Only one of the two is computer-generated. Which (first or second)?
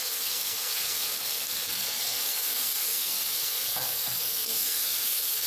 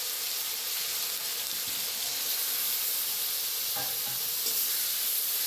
first